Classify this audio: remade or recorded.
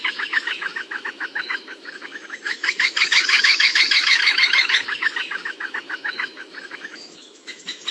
remade